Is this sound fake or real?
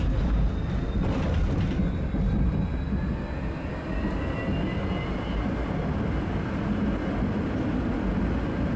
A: real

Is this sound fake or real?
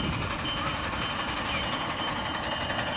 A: real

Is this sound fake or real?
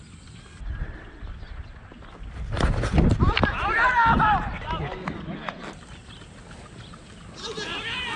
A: real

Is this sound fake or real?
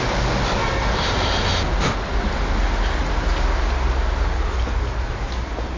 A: real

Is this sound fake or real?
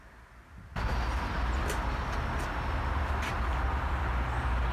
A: real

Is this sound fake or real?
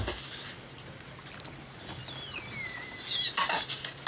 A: real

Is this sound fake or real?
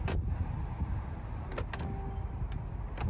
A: real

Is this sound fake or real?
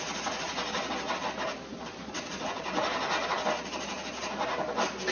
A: real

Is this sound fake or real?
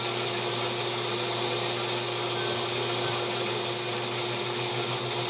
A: real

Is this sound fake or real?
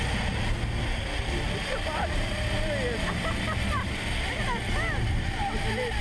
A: real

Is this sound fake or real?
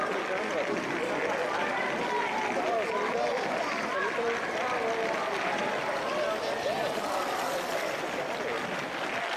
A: real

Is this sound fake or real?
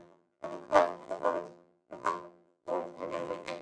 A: fake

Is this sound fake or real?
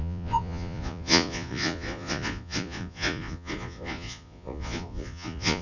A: fake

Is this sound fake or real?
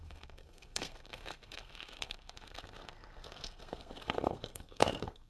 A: fake